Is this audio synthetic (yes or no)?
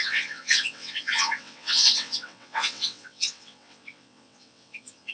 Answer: yes